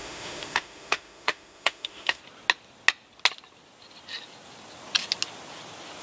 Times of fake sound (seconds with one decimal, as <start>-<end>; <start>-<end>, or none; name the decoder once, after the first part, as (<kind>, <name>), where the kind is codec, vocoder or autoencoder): 0.0-2.2 (autoencoder, DAC-VAE)